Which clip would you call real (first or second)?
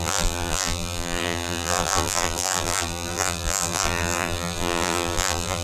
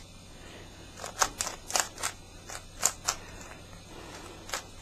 second